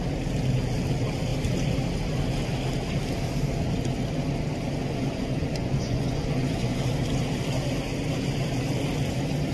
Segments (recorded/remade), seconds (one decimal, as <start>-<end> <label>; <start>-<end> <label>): 0.0-4.8 recorded; 4.8-6.8 remade; 6.8-9.5 recorded